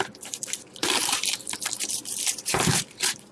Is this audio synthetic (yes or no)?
yes